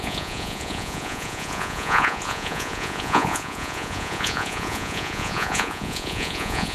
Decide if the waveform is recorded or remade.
remade